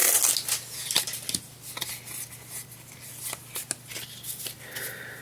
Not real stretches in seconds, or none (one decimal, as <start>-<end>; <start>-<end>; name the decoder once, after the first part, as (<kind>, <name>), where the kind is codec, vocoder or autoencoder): none